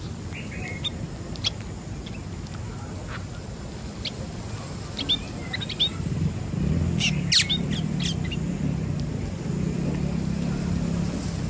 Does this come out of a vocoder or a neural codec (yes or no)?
no